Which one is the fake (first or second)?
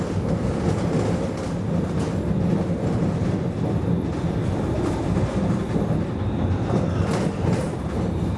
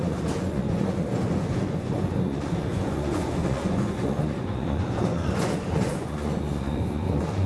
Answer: second